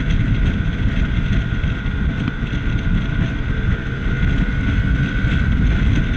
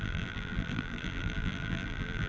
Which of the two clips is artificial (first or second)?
second